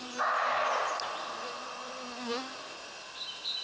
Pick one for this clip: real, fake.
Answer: real